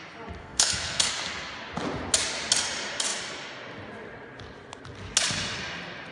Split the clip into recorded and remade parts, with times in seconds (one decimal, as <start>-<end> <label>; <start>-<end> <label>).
0.0-0.4 recorded; 0.4-1.1 remade; 1.1-6.1 recorded